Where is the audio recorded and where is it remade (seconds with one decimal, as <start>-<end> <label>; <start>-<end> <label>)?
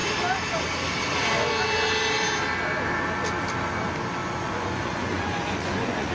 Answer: 0.0-4.2 recorded; 4.2-6.1 remade